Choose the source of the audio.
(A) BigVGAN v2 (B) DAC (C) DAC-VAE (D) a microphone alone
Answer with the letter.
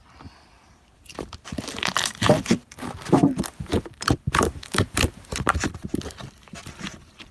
A